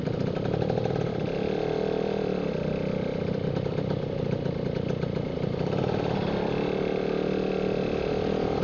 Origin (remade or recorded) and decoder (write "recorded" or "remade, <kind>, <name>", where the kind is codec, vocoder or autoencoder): recorded